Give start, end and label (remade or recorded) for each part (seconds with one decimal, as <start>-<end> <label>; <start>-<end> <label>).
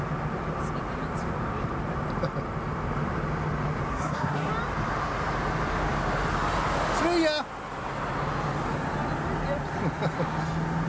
0.0-3.9 recorded; 3.9-4.5 remade; 4.5-10.9 recorded